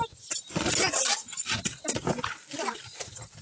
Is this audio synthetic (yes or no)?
no